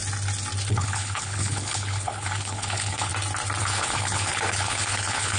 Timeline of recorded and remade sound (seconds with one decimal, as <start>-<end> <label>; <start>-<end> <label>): 0.0-0.7 recorded; 0.7-3.1 remade; 3.1-3.6 recorded; 3.6-5.4 remade

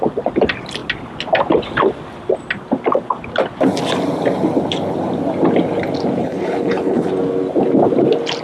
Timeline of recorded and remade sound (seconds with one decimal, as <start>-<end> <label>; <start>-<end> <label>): 0.0-6.2 recorded; 6.2-7.1 remade; 7.1-8.4 recorded